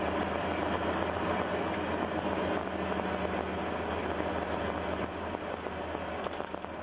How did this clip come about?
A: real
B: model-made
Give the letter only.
A